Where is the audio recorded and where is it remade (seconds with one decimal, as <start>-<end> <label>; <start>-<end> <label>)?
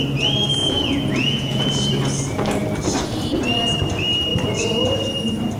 0.0-0.6 recorded; 0.6-1.9 remade; 1.9-5.6 recorded